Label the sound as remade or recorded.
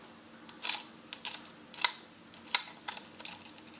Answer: recorded